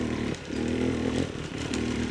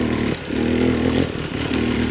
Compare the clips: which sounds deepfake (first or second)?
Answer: first